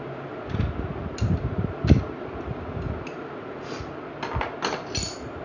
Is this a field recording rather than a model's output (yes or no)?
yes